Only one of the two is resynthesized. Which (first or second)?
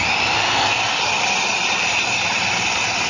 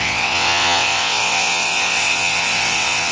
second